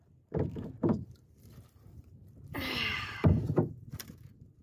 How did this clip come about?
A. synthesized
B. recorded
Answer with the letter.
A